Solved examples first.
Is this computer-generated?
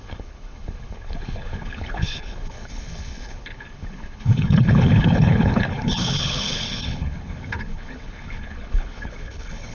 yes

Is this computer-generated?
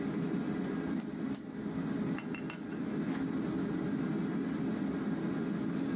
no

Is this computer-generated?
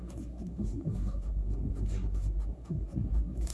yes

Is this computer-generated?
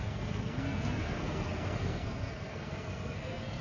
yes